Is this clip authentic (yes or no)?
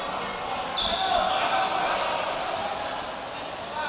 yes